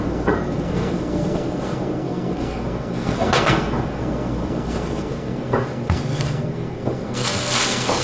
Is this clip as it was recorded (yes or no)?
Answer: no